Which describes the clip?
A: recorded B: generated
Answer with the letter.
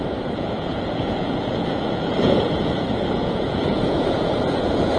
B